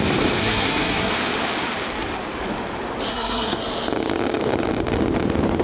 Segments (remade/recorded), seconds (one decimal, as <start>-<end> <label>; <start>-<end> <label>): 0.0-0.4 recorded; 0.4-1.1 remade; 1.1-3.1 recorded; 3.1-3.6 remade; 3.6-5.6 recorded